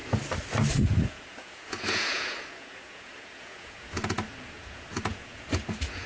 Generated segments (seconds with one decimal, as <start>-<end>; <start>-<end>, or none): 0.8-6.1